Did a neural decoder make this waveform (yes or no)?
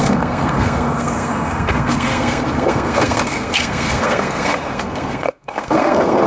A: yes